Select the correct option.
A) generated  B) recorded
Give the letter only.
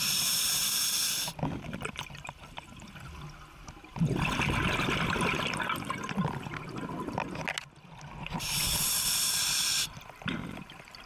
B